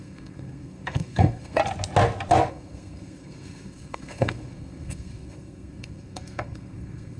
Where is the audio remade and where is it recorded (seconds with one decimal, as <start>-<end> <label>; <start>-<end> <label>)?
0.0-1.6 remade; 1.6-2.5 recorded; 2.5-7.2 remade